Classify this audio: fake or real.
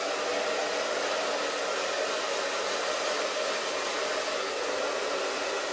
real